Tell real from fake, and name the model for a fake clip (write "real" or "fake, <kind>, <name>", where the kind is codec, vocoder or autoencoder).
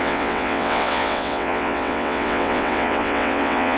fake, vocoder, WaveNeXt